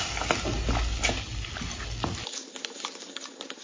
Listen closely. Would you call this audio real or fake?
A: real